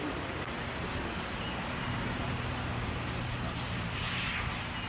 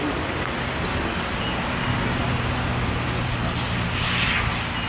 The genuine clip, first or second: second